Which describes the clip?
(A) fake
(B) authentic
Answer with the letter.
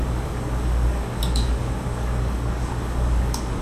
A